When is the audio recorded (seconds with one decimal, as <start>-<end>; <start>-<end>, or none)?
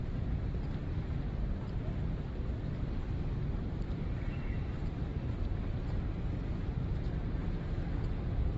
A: 7.4-8.6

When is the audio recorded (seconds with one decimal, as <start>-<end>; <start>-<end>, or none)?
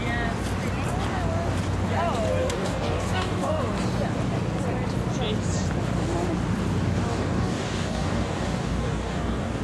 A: 0.0-2.4; 3.6-7.1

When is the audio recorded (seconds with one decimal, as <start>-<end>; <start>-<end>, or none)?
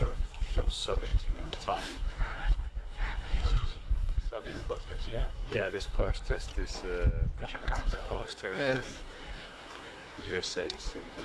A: 6.5-7.4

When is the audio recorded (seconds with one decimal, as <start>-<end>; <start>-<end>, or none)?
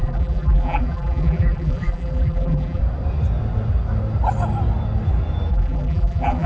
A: 2.8-5.5